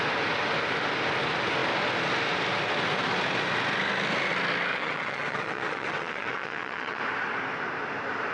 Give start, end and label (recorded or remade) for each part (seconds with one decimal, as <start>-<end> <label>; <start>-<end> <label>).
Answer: 0.0-4.7 recorded; 4.7-7.0 remade; 7.0-8.3 recorded